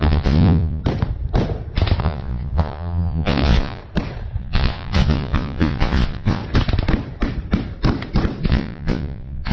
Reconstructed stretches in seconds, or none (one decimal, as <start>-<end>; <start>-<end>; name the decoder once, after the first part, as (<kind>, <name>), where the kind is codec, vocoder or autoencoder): 0.0-0.8 (vocoder, Vocos); 2.0-3.8; 4.4-6.4; 8.5-9.5